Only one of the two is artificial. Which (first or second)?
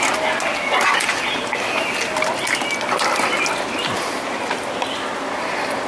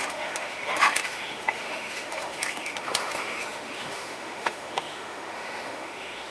second